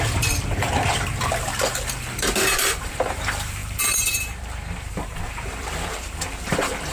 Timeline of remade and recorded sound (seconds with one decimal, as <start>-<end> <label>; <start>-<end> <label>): 0.0-6.9 remade

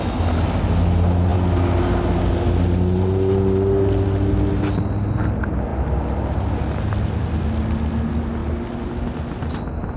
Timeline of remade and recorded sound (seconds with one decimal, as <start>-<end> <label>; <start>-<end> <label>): 0.0-10.0 recorded

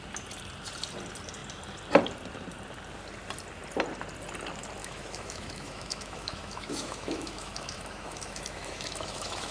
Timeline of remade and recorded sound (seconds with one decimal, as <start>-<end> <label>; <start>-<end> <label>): 0.0-4.8 recorded; 4.8-9.5 remade

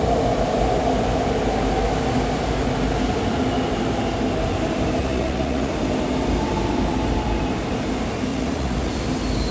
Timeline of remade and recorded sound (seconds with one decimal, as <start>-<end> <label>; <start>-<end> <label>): 0.0-5.0 recorded; 5.0-5.7 remade; 5.7-8.3 recorded; 8.3-8.9 remade; 8.9-9.5 recorded